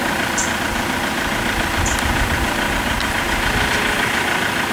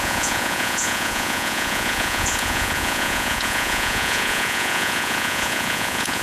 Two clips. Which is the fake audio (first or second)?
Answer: second